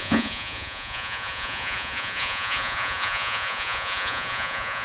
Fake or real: fake